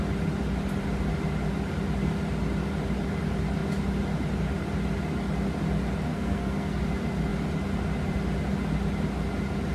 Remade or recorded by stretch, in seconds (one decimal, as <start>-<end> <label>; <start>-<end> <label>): 0.0-6.1 recorded; 6.1-6.8 remade; 6.8-9.7 recorded